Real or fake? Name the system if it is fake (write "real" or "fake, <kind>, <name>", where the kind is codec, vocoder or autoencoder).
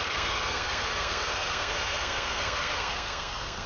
fake, codec, SNAC